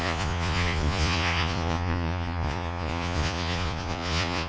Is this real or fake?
fake